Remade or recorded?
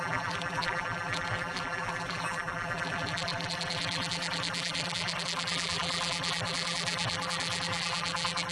remade